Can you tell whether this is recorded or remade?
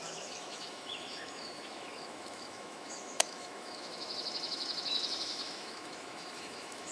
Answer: remade